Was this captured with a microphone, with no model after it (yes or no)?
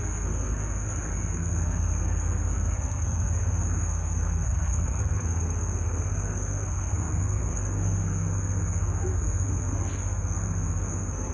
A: no